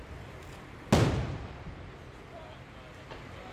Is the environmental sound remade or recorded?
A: recorded